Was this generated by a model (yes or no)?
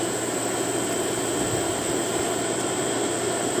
no